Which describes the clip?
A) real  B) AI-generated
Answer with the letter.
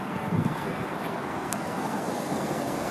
B